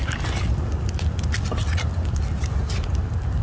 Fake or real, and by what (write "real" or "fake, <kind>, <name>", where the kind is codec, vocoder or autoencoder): real